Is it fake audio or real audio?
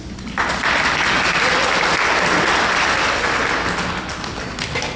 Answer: real